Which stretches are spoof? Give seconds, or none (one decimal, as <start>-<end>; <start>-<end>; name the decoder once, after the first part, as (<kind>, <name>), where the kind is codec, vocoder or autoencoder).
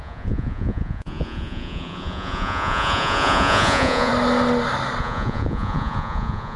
0.0-4.1 (vocoder, Vocos); 5.0-6.6